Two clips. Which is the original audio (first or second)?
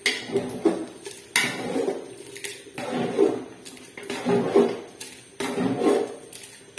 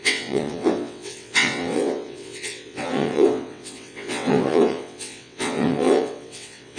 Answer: first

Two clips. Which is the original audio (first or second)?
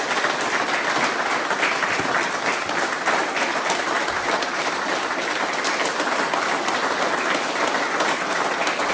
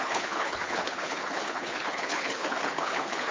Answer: first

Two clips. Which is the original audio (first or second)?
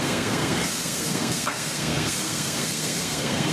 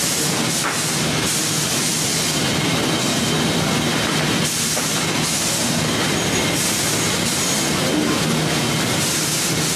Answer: second